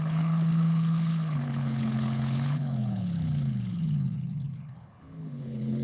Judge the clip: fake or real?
fake